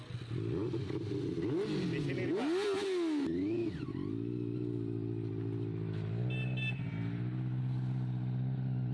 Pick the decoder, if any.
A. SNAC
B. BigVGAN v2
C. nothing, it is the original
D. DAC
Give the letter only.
C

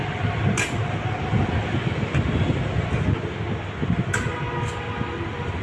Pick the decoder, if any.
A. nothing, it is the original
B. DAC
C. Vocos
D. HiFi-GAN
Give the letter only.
A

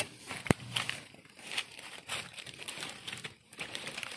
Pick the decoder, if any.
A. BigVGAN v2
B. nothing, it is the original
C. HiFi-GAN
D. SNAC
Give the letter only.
A